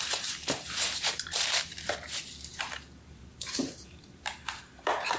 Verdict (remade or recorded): remade